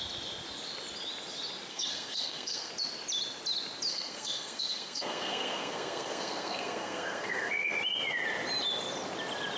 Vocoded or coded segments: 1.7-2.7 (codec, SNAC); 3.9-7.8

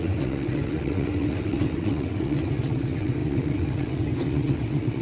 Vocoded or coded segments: 0.0-5.0 (vocoder, WaveNeXt)

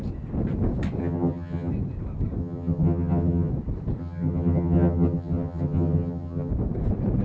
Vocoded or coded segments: 1.0-1.7 (vocoder, HiFi-GAN); 2.4-3.5; 4.0-6.5

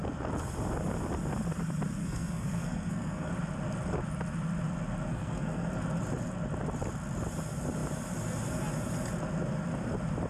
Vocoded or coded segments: 2.0-3.3 (codec, SNAC); 5.1-5.7

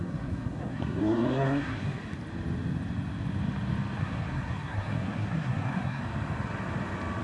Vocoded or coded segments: 0.0-2.0 (codec, SNAC); 4.0-6.0

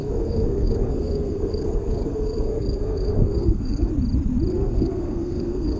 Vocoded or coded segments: 0.0-3.9 (codec, SNAC); 4.5-5.8

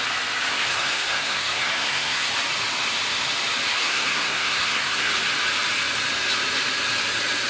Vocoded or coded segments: 0.5-2.3 (codec, SNAC); 3.7-5.1